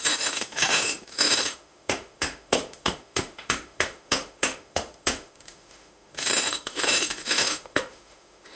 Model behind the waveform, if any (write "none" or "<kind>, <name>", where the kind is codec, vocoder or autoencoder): autoencoder, DAC-VAE